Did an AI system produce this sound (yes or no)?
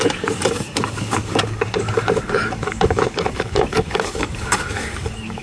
yes